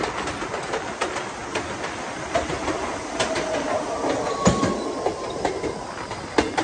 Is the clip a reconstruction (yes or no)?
no